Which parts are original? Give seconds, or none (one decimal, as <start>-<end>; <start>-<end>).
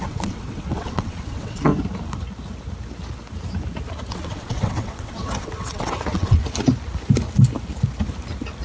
1.7-4.1; 6.4-8.6